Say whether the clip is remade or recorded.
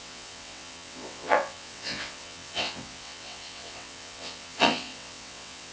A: remade